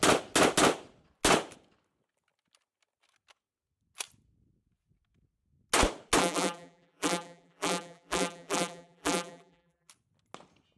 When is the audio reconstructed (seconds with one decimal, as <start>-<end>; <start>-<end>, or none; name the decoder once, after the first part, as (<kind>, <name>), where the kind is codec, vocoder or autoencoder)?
6.2-9.9 (vocoder, BigVGAN v2)